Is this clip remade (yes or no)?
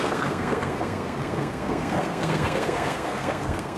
yes